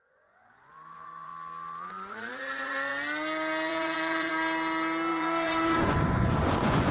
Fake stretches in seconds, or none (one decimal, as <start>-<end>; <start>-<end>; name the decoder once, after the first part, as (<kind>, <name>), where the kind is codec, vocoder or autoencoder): 0.0-1.3 (vocoder, Vocos); 1.9-2.9; 3.7-4.3; 5.1-6.9